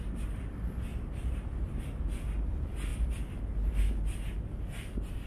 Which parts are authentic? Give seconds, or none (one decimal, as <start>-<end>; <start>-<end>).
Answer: 0.0-0.9; 1.8-5.3